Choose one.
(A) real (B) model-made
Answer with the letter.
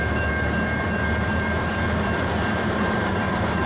B